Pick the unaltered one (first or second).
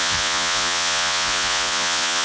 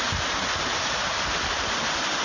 second